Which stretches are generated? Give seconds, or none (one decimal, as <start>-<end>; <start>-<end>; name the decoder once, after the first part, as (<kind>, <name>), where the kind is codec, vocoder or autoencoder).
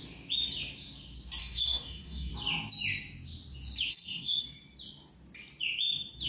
1.4-2.3 (codec, DAC); 3.9-4.4